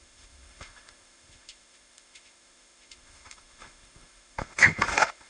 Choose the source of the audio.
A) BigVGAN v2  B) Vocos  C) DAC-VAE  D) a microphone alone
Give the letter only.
C